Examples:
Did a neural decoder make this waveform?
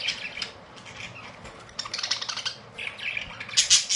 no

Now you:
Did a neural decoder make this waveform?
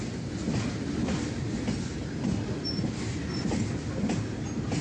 no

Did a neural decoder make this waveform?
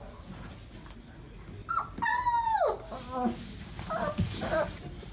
no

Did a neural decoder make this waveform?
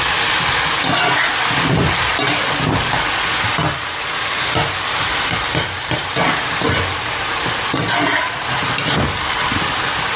no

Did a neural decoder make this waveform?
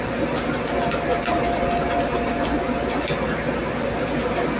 no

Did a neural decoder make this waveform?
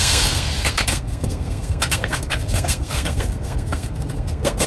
yes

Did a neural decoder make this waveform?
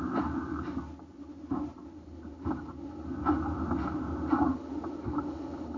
no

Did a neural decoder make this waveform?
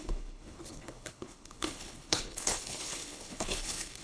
yes